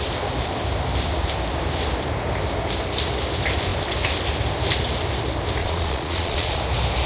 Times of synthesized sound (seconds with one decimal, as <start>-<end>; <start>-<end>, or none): 5.6-6.6